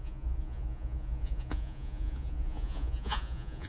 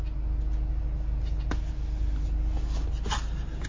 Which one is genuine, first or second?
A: second